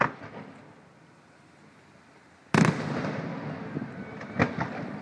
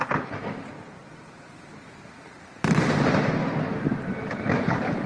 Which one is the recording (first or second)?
first